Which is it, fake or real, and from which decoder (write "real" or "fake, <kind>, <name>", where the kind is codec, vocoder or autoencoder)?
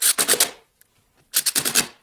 real